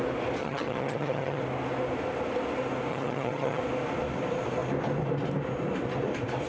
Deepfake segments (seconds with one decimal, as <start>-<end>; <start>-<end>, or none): 0.4-1.4; 2.9-3.6